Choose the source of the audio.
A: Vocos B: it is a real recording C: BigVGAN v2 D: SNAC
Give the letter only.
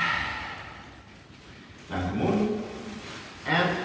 B